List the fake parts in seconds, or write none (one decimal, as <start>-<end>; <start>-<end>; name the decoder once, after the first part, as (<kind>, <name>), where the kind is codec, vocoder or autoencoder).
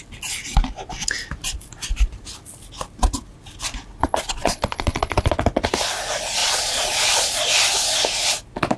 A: 4.0-5.3 (vocoder, Vocos); 6.4-7.4